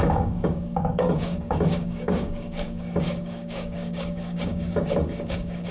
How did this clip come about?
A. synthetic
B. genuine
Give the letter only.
A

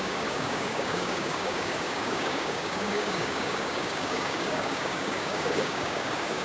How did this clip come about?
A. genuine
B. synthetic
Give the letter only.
B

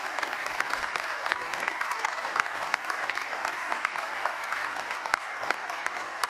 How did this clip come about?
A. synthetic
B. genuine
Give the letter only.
A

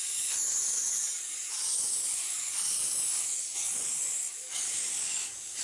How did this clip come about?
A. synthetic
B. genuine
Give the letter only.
A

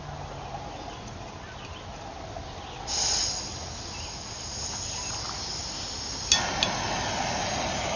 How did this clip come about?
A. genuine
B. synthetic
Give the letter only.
A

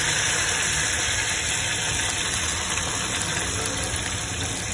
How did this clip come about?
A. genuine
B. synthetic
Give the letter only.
A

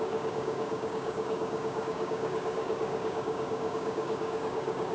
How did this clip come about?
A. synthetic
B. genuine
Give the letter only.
A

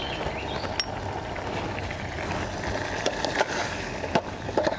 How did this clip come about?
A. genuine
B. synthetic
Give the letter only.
A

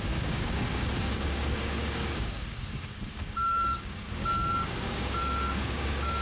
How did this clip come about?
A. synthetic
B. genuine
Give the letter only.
A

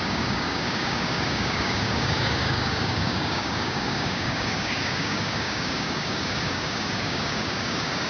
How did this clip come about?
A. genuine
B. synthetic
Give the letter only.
B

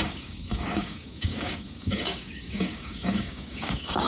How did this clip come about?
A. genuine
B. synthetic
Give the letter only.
B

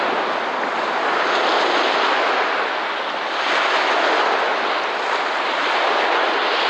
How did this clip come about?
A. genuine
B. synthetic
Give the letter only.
A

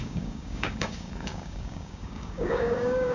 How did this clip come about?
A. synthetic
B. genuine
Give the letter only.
A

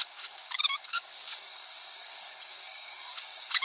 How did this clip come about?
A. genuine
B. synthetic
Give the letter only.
B